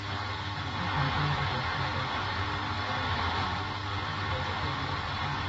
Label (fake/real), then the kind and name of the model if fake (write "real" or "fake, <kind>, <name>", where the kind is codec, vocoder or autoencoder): real